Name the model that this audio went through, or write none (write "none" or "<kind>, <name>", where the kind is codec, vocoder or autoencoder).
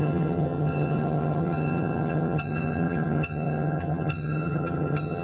vocoder, HiFi-GAN